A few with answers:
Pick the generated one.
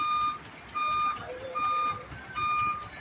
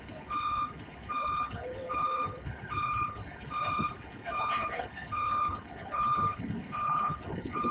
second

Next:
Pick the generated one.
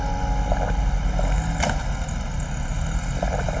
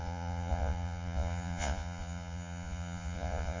second